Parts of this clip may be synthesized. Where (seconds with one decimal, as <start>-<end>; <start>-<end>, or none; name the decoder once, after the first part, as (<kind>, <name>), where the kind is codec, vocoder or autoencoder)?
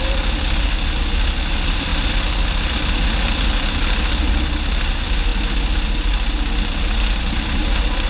none